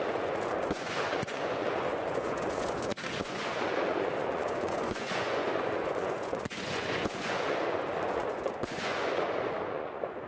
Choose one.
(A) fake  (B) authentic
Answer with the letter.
A